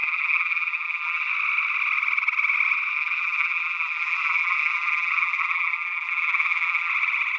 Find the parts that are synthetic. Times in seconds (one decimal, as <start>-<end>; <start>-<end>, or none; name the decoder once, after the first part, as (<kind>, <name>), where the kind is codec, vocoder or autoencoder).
0.0-1.3 (vocoder, BigVGAN v2); 2.9-6.9